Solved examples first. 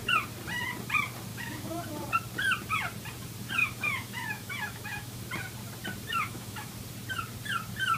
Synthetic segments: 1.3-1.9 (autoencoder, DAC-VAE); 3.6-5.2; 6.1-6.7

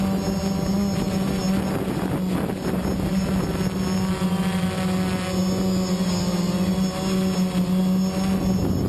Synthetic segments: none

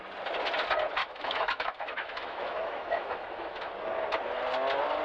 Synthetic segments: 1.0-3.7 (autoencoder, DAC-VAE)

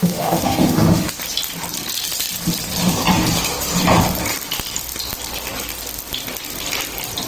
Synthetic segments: 0.0-1.1 (autoencoder, DAC-VAE)

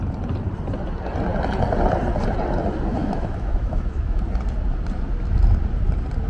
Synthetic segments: 3.0-4.2 (autoencoder, DAC-VAE)